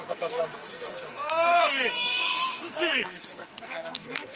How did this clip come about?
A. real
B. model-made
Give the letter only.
B